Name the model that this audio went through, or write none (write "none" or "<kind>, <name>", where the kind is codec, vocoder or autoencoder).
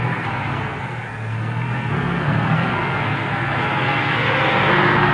codec, SNAC